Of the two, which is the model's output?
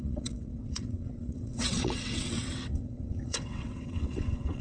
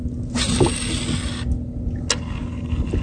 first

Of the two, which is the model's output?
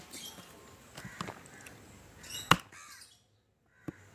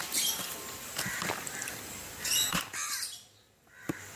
second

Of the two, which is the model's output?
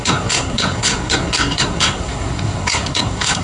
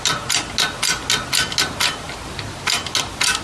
first